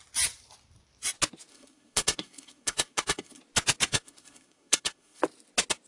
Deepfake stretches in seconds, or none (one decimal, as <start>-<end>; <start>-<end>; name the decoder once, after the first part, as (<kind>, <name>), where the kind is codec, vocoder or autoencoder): 1.5-3.4 (codec, SNAC); 3.9-5.2